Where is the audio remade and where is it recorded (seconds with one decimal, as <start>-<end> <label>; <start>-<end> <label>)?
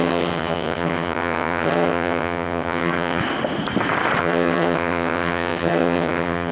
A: 0.0-3.2 remade; 3.2-4.2 recorded; 4.2-6.5 remade